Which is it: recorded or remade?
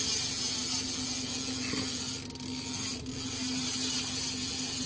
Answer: recorded